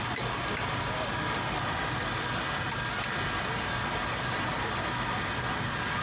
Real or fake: real